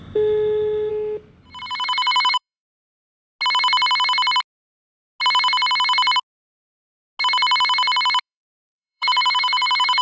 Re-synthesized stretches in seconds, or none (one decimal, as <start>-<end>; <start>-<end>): 0.0-0.9; 1.6-2.9; 8.2-10.0